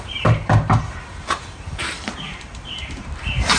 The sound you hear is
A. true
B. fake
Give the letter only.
B